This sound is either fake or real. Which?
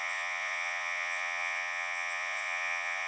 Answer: fake